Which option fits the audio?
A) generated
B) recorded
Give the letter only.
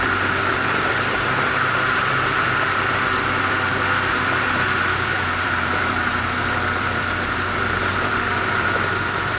A